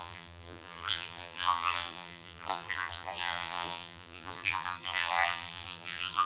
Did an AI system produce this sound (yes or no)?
yes